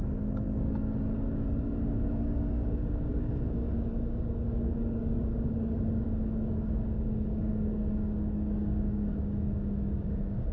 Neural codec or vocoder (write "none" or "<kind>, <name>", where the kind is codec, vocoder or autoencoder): codec, DAC